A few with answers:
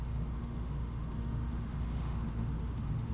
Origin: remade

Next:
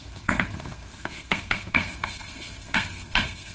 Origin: remade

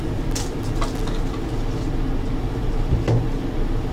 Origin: recorded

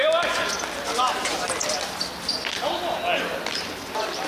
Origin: recorded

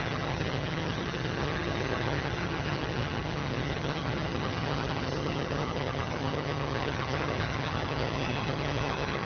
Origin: remade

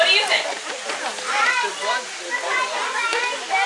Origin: recorded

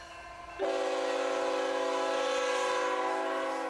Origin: recorded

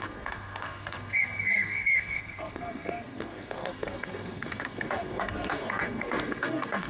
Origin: remade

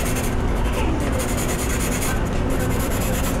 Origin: remade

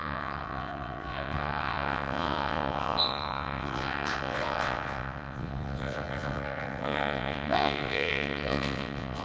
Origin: remade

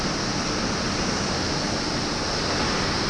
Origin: recorded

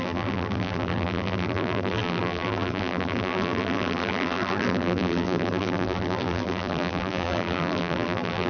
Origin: remade